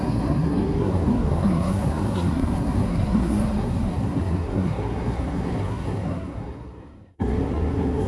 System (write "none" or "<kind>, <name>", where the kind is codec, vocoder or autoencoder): codec, SNAC